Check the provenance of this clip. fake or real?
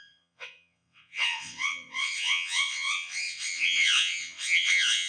fake